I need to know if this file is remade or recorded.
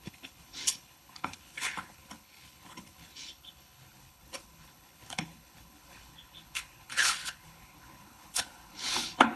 remade